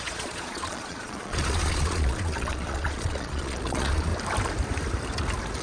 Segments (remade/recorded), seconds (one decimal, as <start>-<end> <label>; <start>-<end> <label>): 0.0-4.1 remade; 4.1-5.6 recorded